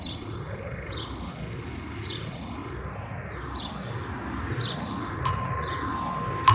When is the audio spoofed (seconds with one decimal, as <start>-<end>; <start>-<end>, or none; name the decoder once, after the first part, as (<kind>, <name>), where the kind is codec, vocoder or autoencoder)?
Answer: 0.0-0.7 (vocoder, Vocos); 2.0-2.6; 4.8-5.9